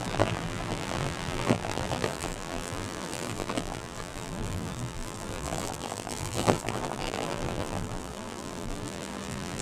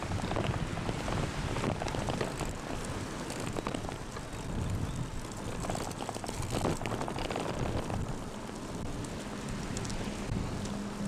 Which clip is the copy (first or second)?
first